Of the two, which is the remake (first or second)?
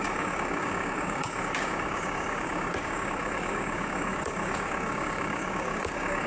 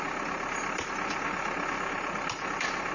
first